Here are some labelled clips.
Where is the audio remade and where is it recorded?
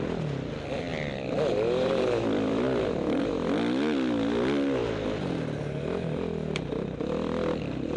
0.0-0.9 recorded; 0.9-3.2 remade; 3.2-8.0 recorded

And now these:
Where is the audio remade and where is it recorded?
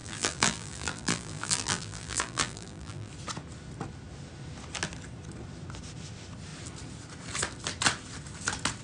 0.0-3.1 remade; 3.1-8.8 recorded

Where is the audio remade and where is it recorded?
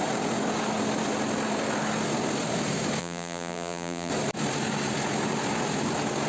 0.0-3.0 recorded; 3.0-4.1 remade; 4.1-6.3 recorded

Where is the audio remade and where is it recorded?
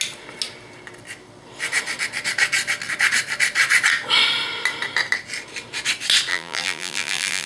0.0-6.3 recorded; 6.3-7.5 remade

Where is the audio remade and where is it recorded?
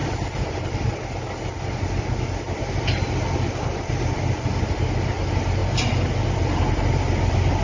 0.0-5.6 recorded; 5.6-6.2 remade; 6.2-7.6 recorded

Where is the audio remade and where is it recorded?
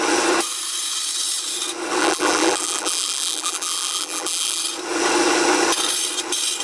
0.0-2.0 recorded; 2.0-4.6 remade; 4.6-6.6 recorded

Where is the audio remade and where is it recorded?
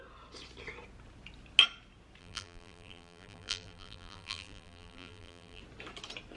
0.0-2.2 recorded; 2.2-5.6 remade; 5.6-6.4 recorded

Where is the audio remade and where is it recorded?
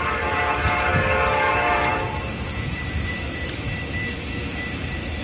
0.0-5.2 remade